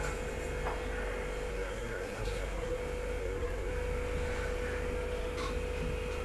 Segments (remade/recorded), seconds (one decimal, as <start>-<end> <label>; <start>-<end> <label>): 0.0-1.5 recorded; 1.5-2.8 remade; 2.8-3.2 recorded; 3.2-3.7 remade; 3.7-6.2 recorded